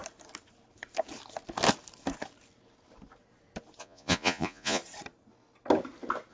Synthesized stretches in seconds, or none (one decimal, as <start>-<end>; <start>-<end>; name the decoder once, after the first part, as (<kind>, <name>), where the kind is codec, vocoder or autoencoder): 3.8-4.8 (vocoder, Vocos)